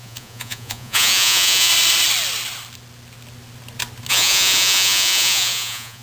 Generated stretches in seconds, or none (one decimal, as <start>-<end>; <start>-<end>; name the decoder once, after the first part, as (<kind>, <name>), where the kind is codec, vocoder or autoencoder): 0.0-1.7 (vocoder, Vocos); 4.1-6.0